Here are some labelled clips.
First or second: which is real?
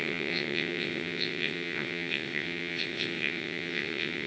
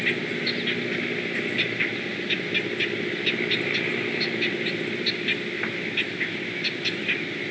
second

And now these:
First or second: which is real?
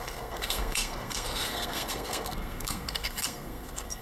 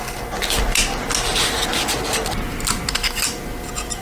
second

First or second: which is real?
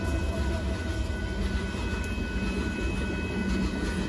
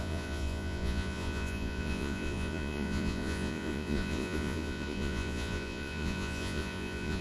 first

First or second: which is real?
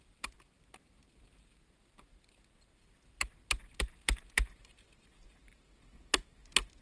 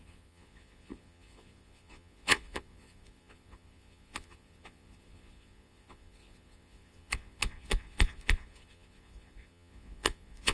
first